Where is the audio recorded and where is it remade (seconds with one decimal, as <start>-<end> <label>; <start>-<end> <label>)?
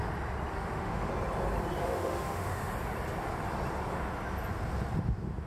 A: 0.0-0.5 recorded; 0.5-1.1 remade; 1.1-1.8 recorded; 1.8-2.7 remade; 2.7-5.5 recorded